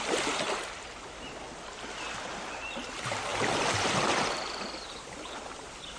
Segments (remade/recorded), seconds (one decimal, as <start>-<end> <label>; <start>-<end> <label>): 0.0-6.0 recorded